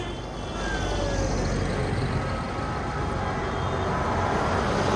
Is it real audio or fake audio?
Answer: real